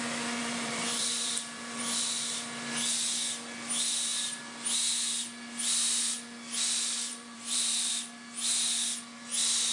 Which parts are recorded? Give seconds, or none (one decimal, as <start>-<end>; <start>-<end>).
0.0-0.4; 1.8-7.1; 7.9-9.7